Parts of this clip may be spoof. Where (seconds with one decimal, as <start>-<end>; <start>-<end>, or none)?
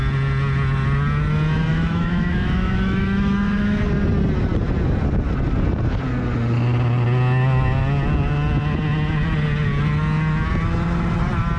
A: 1.7-3.8